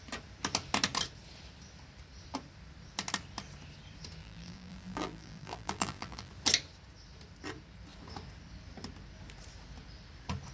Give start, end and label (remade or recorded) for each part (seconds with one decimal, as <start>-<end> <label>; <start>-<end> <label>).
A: 0.0-4.2 recorded; 4.2-6.3 remade; 6.3-10.5 recorded